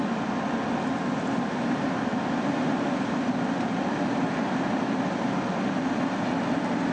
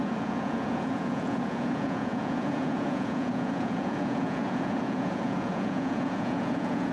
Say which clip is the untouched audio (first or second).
first